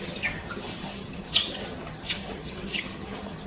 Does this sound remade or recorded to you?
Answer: remade